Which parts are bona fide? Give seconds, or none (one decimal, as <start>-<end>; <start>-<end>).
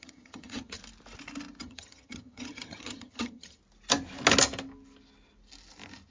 0.8-1.6; 3.6-6.1